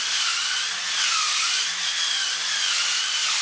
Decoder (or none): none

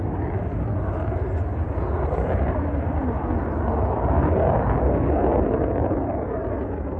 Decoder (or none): none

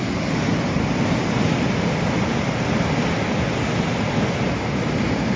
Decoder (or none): none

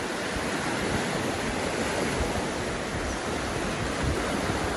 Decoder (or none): none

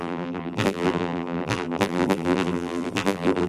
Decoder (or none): vocoder, BigVGAN v2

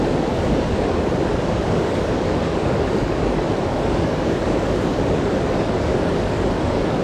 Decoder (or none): codec, DAC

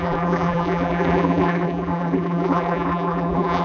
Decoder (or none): vocoder, BigVGAN v2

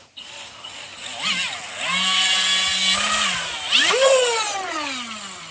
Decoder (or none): none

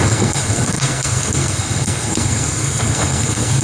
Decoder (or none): codec, SNAC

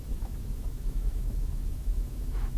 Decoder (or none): autoencoder, DAC-VAE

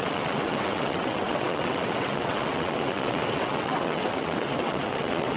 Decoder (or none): vocoder, WaveNeXt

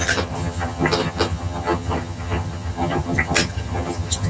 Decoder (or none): vocoder, HiFi-GAN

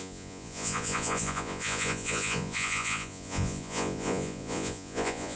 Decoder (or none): vocoder, Vocos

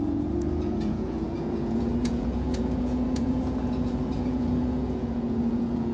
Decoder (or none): vocoder, Vocos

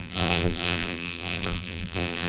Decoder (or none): vocoder, BigVGAN v2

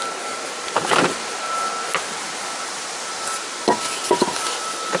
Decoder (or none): none